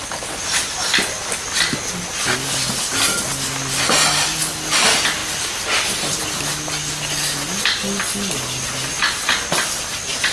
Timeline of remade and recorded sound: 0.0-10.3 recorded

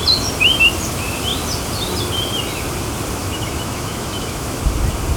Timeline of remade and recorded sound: 0.0-3.2 recorded; 3.2-4.6 remade; 4.6-5.2 recorded